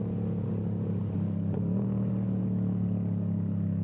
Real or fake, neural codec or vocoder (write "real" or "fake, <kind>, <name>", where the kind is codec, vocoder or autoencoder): fake, codec, DAC